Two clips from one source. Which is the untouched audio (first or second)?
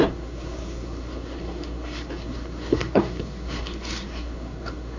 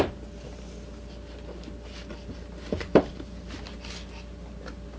second